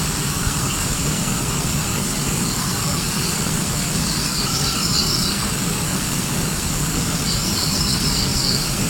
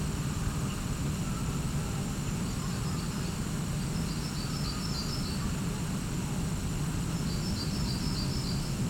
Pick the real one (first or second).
second